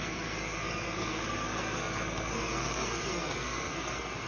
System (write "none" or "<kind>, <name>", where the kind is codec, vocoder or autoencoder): codec, SNAC